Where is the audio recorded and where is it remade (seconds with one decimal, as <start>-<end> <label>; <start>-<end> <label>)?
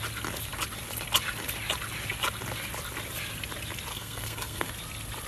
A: 0.0-3.9 recorded; 3.9-4.7 remade; 4.7-5.3 recorded